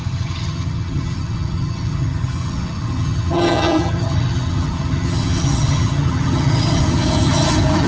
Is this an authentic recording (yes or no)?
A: no